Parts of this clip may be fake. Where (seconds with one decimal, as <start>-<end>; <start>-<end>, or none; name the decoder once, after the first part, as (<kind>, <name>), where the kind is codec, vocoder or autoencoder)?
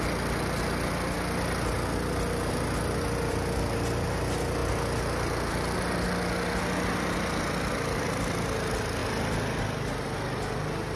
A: none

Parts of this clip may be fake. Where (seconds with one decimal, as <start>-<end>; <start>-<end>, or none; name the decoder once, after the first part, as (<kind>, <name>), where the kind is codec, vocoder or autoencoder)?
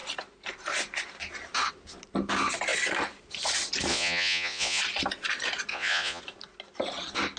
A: 3.9-4.8 (vocoder, Vocos); 5.7-6.2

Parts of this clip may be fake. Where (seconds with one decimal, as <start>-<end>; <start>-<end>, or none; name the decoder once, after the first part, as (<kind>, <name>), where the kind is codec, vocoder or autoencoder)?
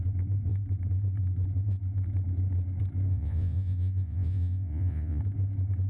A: 3.1-5.2 (vocoder, Vocos)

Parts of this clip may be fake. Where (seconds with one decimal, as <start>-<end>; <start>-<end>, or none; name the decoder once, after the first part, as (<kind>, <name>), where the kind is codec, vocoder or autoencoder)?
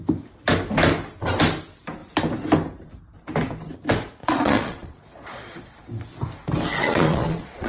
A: 4.2-5.9 (vocoder, Vocos); 6.8-7.7